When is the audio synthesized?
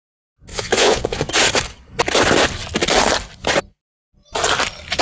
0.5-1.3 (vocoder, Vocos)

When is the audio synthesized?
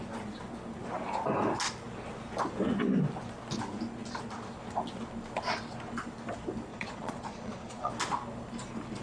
6.7-7.9 (vocoder, Vocos)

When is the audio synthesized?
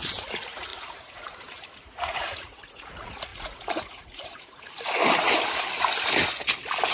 0.0-5.0 (vocoder, Vocos)